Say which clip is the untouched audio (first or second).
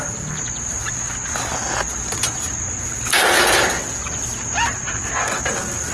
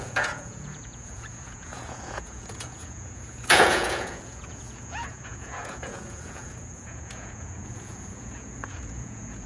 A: first